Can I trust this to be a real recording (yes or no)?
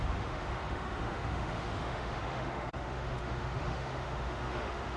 no